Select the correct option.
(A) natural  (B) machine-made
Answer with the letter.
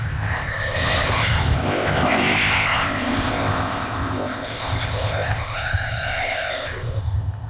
B